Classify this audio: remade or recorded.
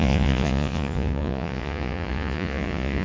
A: remade